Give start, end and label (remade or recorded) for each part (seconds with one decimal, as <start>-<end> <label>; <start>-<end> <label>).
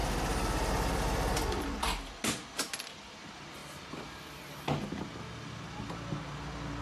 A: 0.0-6.8 recorded